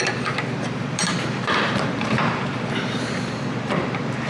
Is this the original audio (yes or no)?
no